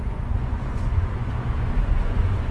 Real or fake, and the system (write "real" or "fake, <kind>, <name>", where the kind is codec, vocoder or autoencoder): fake, vocoder, Vocos